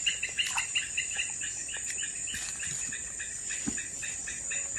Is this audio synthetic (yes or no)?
no